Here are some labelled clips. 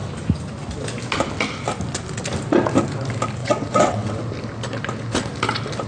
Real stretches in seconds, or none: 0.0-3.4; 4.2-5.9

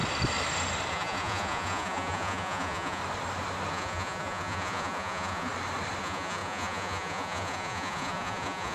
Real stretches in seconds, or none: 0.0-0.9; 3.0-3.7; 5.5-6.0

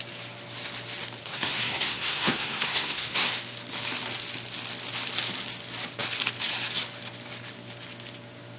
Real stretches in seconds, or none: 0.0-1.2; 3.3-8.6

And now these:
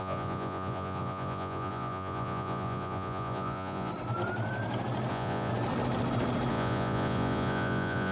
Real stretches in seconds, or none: 3.9-5.1; 5.5-6.5